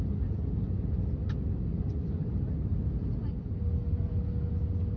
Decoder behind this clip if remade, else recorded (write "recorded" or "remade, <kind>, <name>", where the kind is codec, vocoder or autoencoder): recorded